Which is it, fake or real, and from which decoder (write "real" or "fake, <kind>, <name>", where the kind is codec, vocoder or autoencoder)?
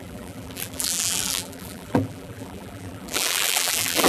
fake, vocoder, BigVGAN v2